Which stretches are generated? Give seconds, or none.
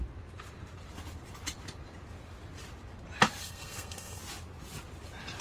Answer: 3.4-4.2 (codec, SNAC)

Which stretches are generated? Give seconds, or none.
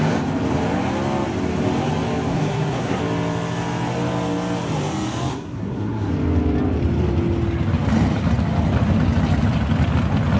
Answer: 2.3-3.0 (codec, SNAC); 5.3-6.1